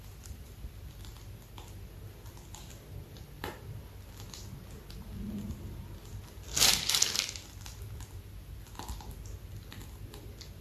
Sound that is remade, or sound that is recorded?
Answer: recorded